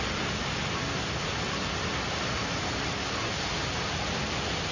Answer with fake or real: real